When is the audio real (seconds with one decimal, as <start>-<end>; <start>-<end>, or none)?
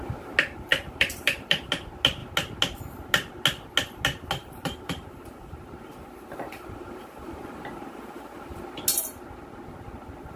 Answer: 0.0-0.7; 1.7-4.4; 8.6-10.4